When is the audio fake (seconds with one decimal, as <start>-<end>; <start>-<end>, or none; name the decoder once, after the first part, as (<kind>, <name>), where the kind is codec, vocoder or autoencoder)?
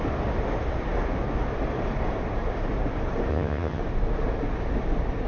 3.3-3.8 (vocoder, HiFi-GAN)